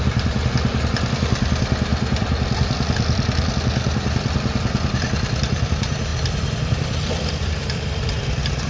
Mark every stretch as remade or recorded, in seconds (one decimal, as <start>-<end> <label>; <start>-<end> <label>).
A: 0.0-1.9 recorded; 1.9-3.5 remade; 3.5-6.1 recorded; 6.1-8.7 remade